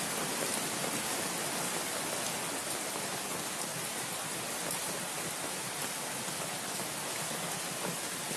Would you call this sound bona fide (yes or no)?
yes